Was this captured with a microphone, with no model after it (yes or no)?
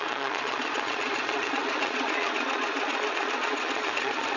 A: no